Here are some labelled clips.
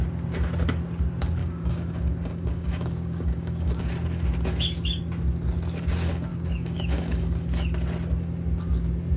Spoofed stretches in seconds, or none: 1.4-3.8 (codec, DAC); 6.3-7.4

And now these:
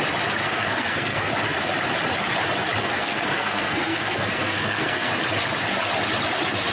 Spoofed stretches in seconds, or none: 0.4-1.3 (codec, SNAC); 2.8-5.1

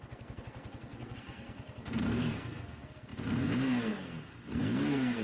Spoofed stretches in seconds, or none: 0.0-5.2 (codec, SNAC)

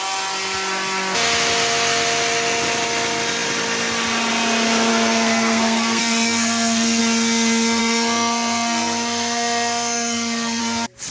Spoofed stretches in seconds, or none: 4.9-7.0 (codec, SNAC); 7.8-10.6

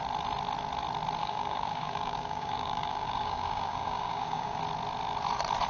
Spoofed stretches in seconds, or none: 1.2-4.6 (codec, DAC)

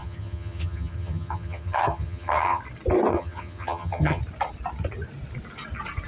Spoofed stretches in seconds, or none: 0.0-2.6 (vocoder, HiFi-GAN); 3.1-4.2

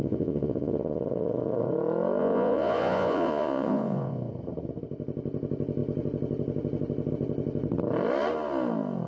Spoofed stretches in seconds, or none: 0.0-1.7 (vocoder, Vocos); 2.2-4.3